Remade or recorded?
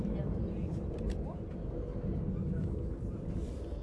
recorded